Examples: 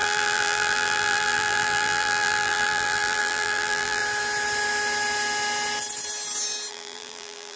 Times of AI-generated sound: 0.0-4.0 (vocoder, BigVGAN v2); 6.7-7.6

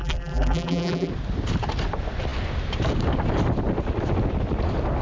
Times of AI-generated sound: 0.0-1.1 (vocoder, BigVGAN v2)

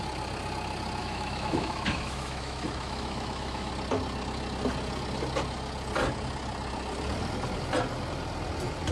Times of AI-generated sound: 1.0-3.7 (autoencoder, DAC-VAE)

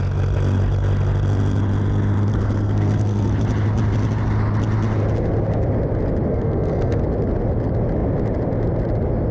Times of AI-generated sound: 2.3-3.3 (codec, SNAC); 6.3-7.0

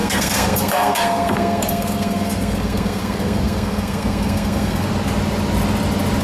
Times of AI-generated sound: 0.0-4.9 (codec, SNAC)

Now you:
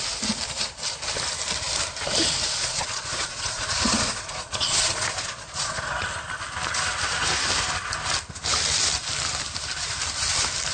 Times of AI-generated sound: 2.6-6.1 (vocoder, Vocos)

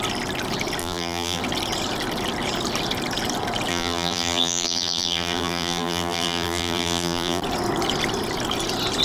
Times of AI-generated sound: 0.8-1.4 (vocoder, BigVGAN v2); 3.7-7.4

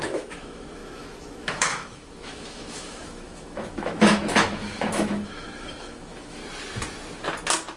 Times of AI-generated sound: 0.0-6.4 (autoencoder, DAC-VAE)